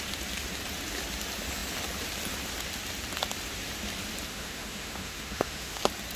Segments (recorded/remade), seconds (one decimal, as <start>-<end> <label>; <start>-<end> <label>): 0.0-4.3 recorded; 4.3-5.8 remade; 5.8-6.2 recorded